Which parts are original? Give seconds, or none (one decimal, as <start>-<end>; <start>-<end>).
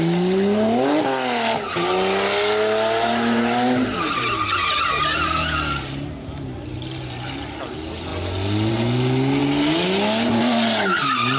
0.0-11.4